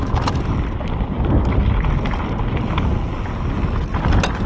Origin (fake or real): real